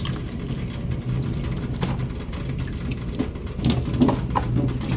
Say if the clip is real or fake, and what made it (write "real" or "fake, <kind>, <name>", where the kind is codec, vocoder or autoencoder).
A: real